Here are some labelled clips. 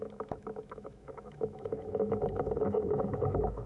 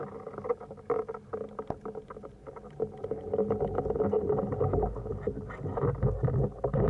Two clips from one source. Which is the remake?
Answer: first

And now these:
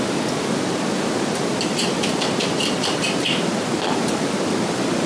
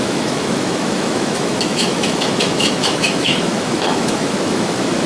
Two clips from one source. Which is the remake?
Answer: second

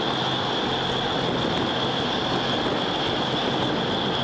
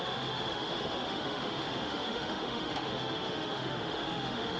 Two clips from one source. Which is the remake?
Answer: second